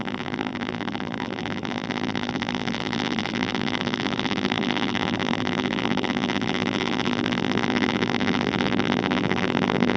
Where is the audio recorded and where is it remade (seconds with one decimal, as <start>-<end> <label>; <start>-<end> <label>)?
0.0-10.0 remade